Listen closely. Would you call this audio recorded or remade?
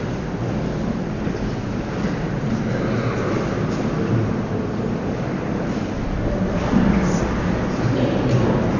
recorded